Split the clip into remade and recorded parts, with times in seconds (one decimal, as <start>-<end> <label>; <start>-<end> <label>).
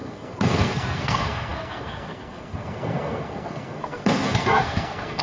0.0-5.2 remade